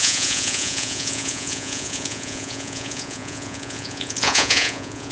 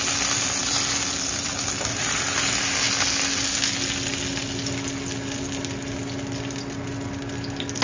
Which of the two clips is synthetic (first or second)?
first